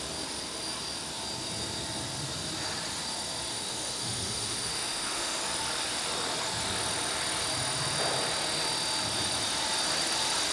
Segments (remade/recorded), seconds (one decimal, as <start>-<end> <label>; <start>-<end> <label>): 0.0-3.5 recorded; 3.5-5.4 remade; 5.4-10.5 recorded